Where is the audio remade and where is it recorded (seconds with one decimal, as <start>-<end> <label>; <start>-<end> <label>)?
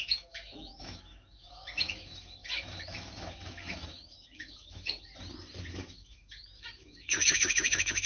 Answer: 0.0-5.1 remade; 5.1-5.7 recorded; 5.7-8.1 remade